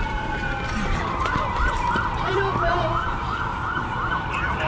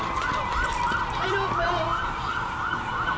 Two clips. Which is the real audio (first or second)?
second